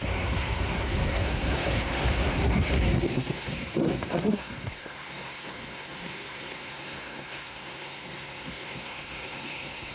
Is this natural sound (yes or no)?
no